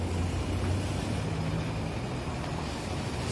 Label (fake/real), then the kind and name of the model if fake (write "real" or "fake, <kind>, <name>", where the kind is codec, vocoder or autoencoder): real